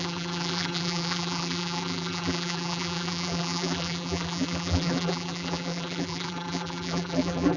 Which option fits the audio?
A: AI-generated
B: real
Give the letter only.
A